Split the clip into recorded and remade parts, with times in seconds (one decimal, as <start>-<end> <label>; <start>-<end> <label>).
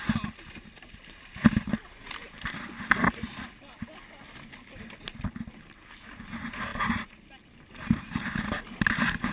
0.0-6.7 recorded; 6.7-7.3 remade; 7.3-9.3 recorded